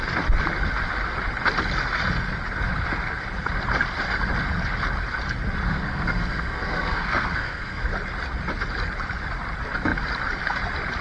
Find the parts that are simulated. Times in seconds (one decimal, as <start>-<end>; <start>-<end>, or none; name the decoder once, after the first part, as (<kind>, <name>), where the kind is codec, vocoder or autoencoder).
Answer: 5.7-7.9 (codec, SNAC)